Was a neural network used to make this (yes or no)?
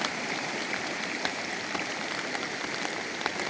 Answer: no